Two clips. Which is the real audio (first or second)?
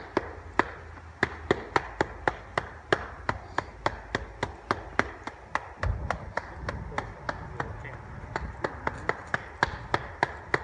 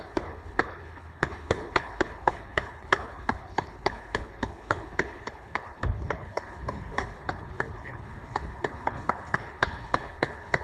first